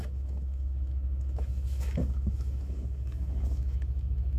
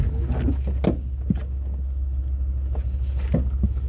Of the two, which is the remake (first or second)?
first